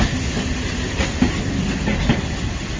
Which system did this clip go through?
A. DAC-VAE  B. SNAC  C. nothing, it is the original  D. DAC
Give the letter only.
C